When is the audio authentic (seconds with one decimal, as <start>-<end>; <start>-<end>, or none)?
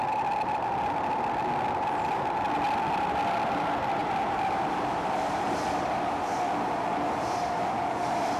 0.0-8.4